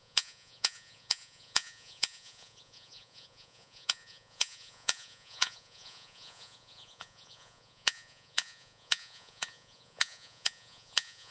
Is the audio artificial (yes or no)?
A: yes